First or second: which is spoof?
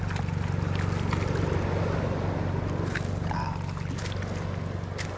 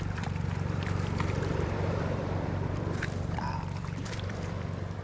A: second